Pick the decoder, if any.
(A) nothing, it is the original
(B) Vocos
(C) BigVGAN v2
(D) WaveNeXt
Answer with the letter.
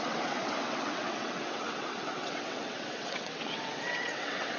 D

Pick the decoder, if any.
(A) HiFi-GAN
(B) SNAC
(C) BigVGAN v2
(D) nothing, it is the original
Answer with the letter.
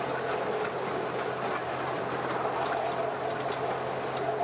D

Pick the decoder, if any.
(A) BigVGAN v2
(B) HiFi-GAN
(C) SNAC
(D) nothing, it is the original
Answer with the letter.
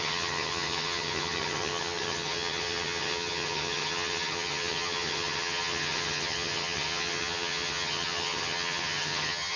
B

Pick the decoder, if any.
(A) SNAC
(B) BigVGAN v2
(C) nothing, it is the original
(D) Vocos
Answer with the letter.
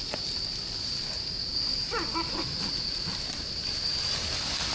C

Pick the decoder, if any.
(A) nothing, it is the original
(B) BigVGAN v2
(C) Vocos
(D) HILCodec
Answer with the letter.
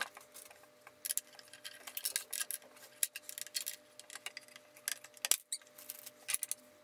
A